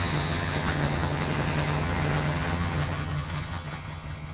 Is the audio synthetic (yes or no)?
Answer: yes